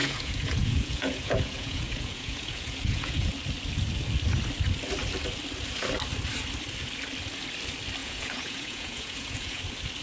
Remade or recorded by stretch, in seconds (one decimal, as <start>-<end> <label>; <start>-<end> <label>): 0.0-3.3 remade; 3.3-8.0 recorded; 8.0-9.6 remade; 9.6-10.0 recorded